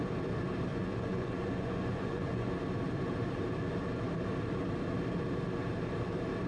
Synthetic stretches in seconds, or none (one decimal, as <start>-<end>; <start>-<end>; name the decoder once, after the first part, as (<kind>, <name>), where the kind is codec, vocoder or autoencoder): 0.7-2.5 (vocoder, Vocos)